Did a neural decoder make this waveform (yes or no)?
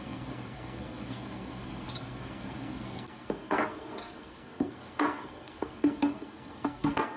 yes